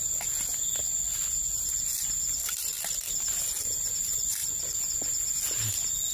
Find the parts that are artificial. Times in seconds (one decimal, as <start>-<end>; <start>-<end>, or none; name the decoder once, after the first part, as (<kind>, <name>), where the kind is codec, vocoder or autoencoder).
none

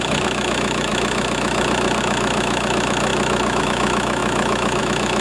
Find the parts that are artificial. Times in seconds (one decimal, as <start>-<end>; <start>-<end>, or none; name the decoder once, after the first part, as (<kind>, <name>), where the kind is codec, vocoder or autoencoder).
0.0-5.2 (autoencoder, DAC-VAE)